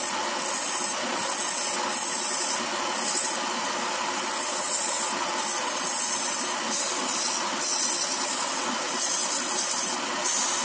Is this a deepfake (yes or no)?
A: no